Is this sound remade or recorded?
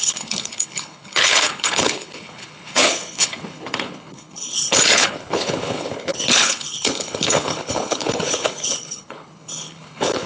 remade